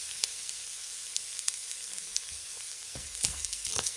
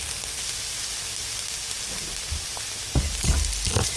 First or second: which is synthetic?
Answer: first